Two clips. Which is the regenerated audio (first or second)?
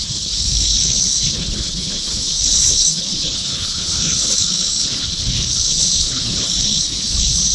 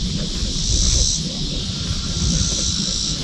first